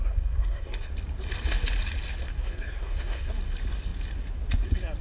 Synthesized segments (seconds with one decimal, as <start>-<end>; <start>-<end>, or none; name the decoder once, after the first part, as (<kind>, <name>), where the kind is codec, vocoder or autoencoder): 0.0-0.9 (codec, SNAC); 2.3-3.3